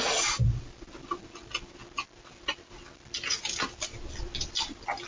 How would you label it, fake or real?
real